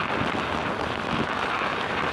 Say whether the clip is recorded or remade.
recorded